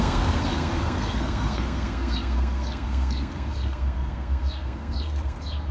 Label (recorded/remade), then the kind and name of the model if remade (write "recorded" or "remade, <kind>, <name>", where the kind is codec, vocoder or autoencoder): remade, codec, SNAC